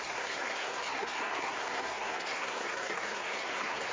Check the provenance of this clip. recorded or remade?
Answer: remade